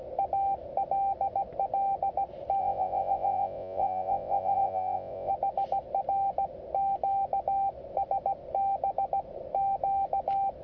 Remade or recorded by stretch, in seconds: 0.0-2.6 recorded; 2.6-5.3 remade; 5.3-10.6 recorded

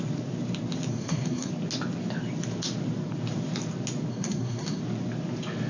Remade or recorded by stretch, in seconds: 0.0-0.9 recorded; 0.9-1.5 remade; 1.5-4.1 recorded; 4.1-4.8 remade; 4.8-5.7 recorded